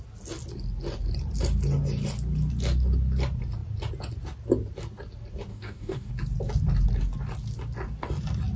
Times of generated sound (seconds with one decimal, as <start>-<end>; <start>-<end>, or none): 5.5-6.1